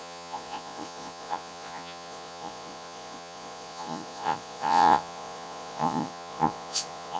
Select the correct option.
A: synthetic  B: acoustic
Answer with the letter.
A